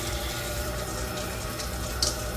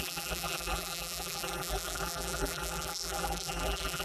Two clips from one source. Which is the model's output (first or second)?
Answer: second